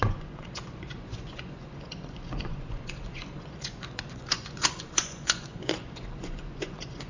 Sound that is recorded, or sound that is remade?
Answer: remade